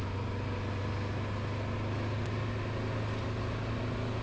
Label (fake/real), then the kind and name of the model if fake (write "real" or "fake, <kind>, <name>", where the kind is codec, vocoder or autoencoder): real